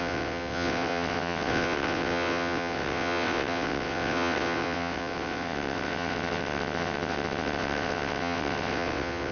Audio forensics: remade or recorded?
remade